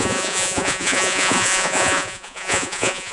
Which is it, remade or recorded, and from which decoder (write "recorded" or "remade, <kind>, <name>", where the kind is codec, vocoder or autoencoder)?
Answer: remade, vocoder, Vocos